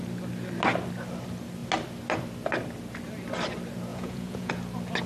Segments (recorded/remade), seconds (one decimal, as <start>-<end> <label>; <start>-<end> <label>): 0.0-3.9 recorded; 3.9-4.5 remade; 4.5-5.1 recorded